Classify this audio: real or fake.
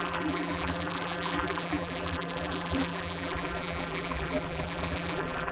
fake